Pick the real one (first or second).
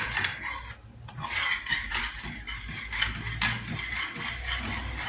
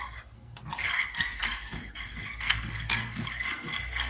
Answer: first